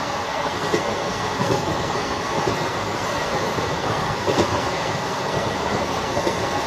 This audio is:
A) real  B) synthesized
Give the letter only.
B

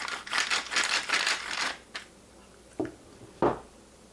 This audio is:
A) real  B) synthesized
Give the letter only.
A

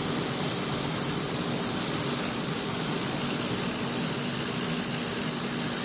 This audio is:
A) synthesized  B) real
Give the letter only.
B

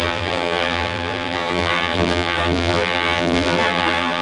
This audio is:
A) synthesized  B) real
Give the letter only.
A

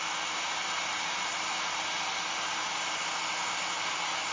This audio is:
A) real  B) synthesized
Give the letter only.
A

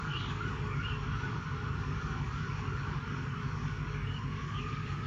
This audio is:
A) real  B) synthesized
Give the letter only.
B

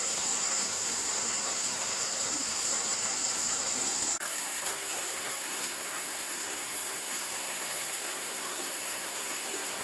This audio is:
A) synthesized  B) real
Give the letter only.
A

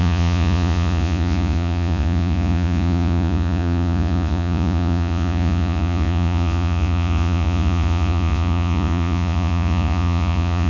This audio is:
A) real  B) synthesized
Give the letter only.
B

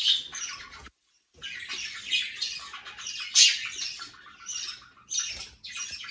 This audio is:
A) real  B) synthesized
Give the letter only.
A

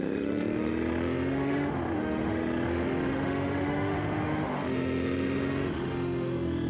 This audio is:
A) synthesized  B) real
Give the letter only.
A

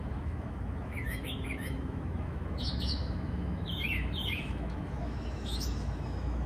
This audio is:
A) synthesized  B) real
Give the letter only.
A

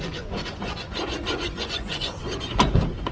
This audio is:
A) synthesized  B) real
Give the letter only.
A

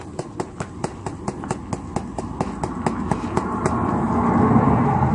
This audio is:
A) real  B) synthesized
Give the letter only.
A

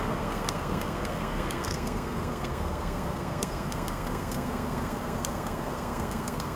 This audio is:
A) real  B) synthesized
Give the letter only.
B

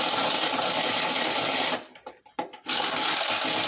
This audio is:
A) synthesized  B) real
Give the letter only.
B